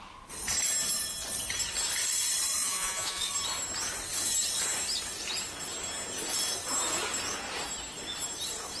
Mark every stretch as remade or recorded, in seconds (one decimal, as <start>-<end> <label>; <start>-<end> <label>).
0.0-2.6 recorded; 2.6-3.3 remade; 3.3-8.8 recorded